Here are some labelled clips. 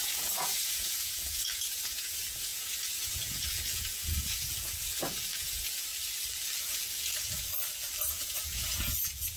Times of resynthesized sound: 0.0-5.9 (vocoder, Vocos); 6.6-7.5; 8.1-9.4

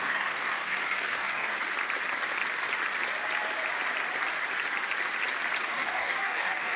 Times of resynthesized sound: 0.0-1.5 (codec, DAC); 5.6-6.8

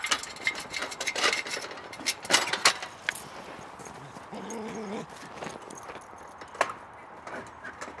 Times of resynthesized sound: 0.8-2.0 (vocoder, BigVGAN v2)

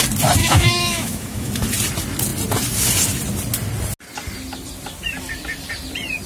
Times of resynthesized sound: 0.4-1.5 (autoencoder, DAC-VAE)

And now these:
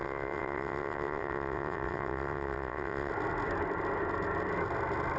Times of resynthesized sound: 0.0-3.1 (vocoder, WaveNeXt)

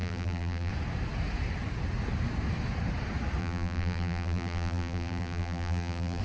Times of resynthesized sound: 0.0-0.7 (vocoder, BigVGAN v2); 3.4-6.2